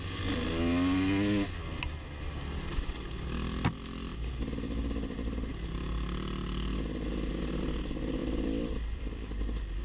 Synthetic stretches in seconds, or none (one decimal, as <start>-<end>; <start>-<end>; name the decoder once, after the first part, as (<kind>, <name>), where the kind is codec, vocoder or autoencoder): 4.1-5.5 (vocoder, BigVGAN v2); 8.2-9.8

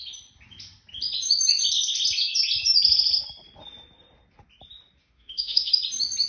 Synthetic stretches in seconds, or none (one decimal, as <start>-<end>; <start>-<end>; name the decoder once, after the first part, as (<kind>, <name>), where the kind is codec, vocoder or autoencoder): 5.0-5.7 (autoencoder, DAC-VAE)

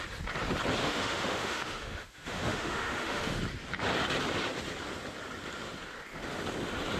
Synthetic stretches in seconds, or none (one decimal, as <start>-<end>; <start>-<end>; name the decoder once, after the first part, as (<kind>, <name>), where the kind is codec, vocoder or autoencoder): 0.8-3.4 (autoencoder, DAC-VAE)

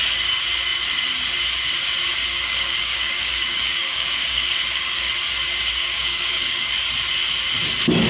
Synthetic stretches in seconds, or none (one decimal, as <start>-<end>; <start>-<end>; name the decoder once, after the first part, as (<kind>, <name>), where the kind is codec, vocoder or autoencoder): 2.3-5.1 (codec, DAC); 5.9-6.7

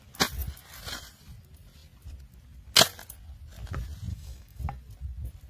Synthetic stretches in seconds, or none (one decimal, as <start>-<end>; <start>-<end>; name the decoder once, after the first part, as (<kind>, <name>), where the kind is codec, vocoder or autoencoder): 4.1-4.6 (codec, DAC)

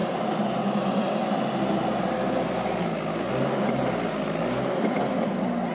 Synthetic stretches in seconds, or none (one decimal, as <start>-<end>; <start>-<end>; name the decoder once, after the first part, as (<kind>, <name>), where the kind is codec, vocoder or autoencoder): none